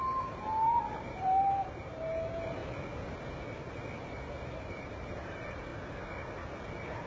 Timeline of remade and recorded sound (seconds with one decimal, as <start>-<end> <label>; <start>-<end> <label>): 0.0-2.6 remade; 2.6-4.7 recorded; 4.7-5.7 remade; 5.7-7.1 recorded